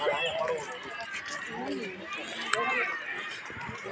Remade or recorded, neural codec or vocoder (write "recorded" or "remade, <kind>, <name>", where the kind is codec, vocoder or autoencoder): recorded